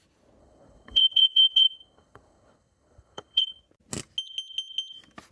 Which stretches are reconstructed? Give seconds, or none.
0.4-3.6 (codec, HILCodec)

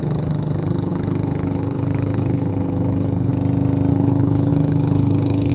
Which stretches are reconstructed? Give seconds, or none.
0.0-3.3 (codec, HILCodec); 3.9-5.5

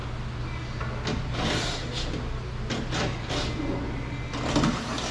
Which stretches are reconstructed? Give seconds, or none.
none

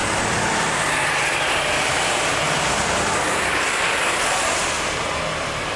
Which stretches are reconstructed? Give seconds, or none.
none

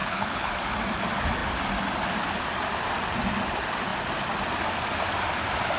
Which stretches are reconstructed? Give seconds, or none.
0.0-0.5 (codec, HILCodec)

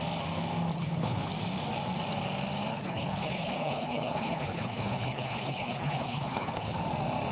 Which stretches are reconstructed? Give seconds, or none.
0.7-1.3 (codec, HILCodec); 2.7-6.8

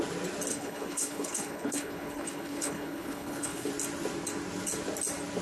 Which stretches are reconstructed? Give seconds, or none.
0.5-3.7 (codec, HILCodec)